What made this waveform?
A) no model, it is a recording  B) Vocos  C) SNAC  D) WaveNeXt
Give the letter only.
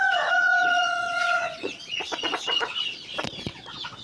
B